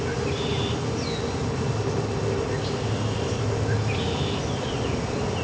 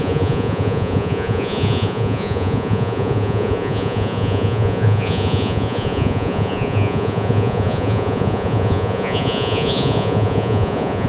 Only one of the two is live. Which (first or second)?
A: first